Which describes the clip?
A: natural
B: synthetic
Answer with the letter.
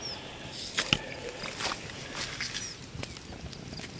A